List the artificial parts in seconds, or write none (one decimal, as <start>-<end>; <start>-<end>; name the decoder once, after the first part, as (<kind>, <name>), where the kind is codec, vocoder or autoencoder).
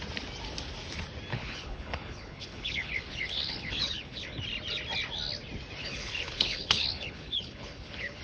1.3-4.4 (codec, HILCodec); 5.8-8.2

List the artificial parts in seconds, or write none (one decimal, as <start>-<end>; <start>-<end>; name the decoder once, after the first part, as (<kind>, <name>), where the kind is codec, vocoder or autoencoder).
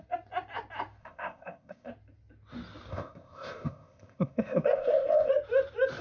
1.0-1.9 (codec, ZipCodec); 2.9-5.3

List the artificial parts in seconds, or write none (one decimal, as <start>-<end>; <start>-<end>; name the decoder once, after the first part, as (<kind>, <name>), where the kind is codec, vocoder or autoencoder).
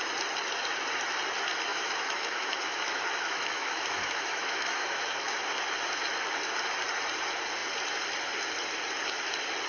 1.7-5.4 (autoencoder, DAC-VAE)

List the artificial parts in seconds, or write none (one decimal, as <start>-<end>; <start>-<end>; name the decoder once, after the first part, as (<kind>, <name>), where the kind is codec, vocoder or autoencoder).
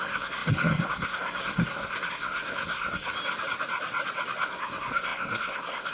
0.0-3.1 (codec, SNAC); 4.4-5.9